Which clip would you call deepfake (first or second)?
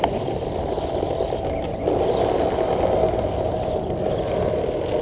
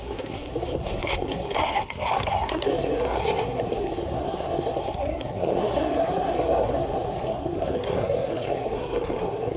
second